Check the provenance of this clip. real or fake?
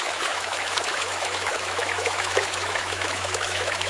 fake